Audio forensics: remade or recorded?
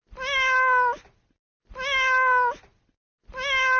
recorded